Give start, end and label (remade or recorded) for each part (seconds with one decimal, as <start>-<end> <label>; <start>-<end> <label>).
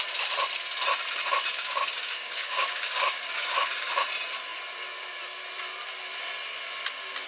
0.0-1.5 recorded; 1.5-3.9 remade; 3.9-7.3 recorded